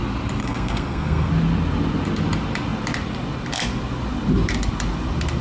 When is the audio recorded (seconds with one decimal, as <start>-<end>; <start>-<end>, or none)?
0.0-0.4; 1.3-5.4